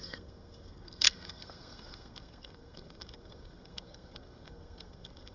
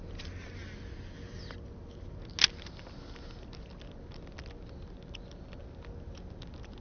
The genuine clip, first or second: second